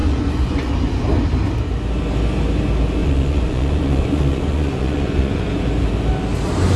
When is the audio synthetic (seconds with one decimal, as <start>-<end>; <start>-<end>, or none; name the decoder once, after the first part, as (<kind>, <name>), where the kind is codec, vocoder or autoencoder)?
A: 0.0-0.7 (vocoder, Vocos); 3.0-5.5